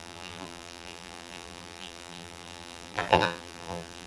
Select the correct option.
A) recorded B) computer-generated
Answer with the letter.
B